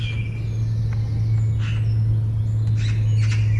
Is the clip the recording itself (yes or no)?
yes